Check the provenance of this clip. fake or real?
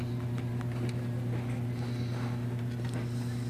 real